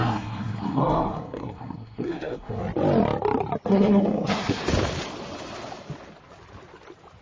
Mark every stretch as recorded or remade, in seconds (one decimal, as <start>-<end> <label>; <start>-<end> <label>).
0.0-2.6 remade; 2.6-3.7 recorded; 3.7-4.6 remade; 4.6-7.2 recorded